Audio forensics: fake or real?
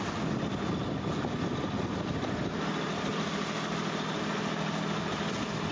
real